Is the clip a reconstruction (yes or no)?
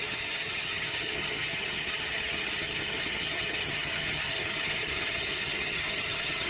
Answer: yes